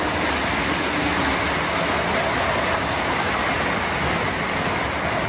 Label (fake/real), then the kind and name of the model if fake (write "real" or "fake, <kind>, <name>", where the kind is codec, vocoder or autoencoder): real